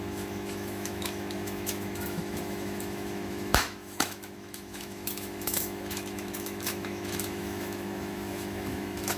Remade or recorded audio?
remade